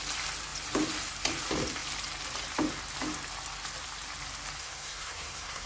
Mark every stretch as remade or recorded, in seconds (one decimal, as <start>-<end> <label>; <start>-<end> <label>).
0.0-4.6 recorded; 4.6-5.7 remade